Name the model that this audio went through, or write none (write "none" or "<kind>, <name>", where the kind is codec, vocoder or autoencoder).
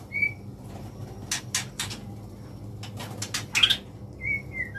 none